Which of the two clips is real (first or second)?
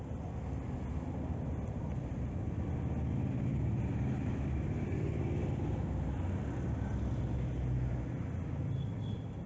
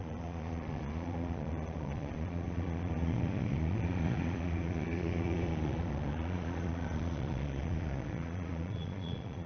first